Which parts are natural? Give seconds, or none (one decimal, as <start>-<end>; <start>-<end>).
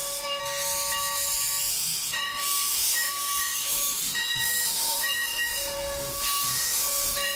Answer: 0.4-1.7